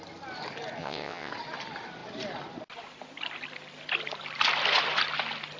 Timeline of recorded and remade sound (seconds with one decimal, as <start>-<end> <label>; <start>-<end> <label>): 0.0-0.8 recorded; 0.8-1.3 remade; 1.3-5.6 recorded